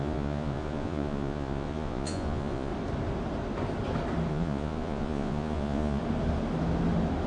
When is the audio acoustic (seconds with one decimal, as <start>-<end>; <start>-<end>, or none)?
2.7-4.3; 6.0-7.3